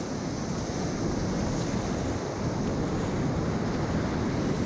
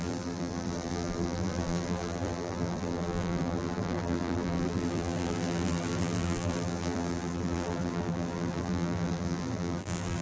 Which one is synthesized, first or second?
second